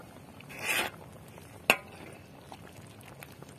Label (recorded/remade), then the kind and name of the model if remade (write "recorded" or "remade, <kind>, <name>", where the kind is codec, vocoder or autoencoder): recorded